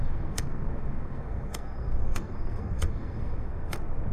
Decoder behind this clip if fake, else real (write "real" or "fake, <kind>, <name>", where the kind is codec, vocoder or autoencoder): fake, codec, SNAC